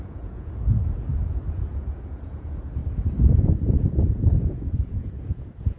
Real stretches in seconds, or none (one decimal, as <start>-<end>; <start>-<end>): 2.8-3.3